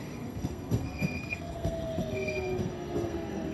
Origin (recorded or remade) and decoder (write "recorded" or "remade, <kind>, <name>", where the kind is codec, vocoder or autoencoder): remade, codec, SNAC